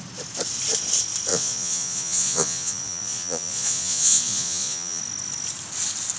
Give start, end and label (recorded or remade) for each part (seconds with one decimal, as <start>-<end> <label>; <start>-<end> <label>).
0.0-1.3 recorded; 1.3-5.0 remade; 5.0-6.2 recorded